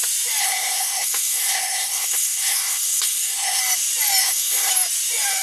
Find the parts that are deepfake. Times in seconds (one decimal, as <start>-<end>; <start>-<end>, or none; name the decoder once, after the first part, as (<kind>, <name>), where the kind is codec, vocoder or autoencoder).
0.4-3.6 (codec, SNAC); 4.2-4.7